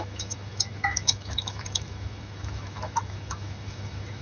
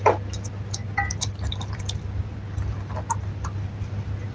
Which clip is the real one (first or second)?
second